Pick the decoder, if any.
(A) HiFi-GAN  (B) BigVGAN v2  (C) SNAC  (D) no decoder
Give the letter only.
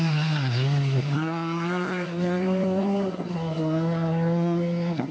C